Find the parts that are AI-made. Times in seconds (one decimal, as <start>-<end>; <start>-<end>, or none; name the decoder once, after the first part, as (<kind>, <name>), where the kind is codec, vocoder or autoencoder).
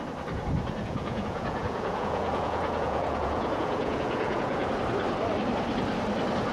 0.8-4.7 (vocoder, Vocos)